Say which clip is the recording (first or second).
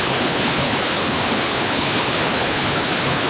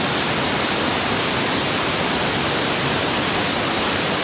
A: second